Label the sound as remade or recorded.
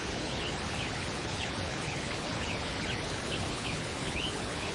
remade